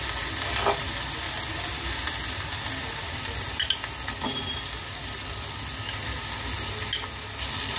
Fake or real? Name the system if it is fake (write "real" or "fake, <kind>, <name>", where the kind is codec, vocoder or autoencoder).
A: real